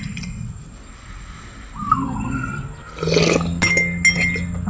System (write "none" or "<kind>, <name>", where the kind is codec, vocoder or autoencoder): none